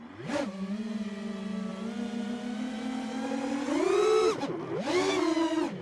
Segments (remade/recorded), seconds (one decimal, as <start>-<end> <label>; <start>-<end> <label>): 0.0-5.8 recorded